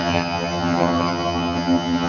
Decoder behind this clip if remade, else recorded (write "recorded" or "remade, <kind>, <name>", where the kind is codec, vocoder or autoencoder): remade, vocoder, HiFi-GAN